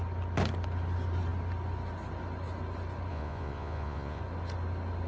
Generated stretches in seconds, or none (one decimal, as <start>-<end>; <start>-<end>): 3.1-4.2